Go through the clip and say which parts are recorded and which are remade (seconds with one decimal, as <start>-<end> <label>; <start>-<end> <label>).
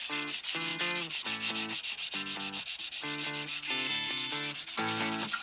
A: 0.0-5.4 recorded